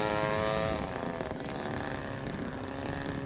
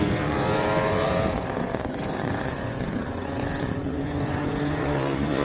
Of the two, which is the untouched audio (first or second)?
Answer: first